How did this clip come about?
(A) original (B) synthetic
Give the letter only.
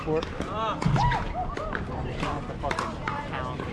A